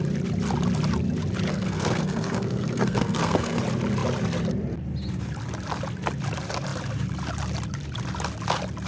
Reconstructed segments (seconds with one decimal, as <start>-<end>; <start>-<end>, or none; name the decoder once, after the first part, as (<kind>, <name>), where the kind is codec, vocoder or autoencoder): 1.5-3.6 (codec, SNAC)